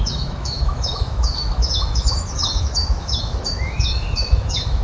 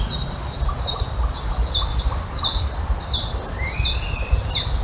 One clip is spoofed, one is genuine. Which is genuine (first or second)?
second